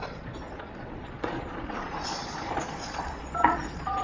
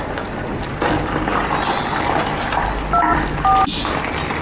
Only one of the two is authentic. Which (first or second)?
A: second